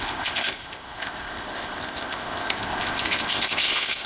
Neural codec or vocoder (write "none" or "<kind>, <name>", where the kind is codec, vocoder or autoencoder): codec, ZipCodec